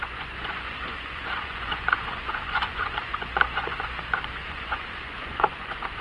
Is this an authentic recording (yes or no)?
no